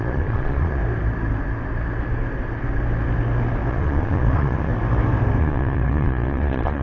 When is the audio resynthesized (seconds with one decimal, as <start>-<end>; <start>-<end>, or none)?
0.0-0.8; 3.7-4.7; 5.4-6.8